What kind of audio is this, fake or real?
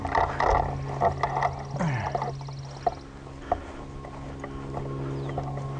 real